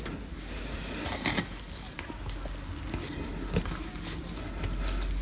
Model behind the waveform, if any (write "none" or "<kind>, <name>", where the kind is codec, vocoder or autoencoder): none